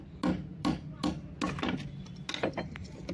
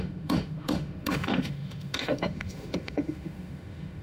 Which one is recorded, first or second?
first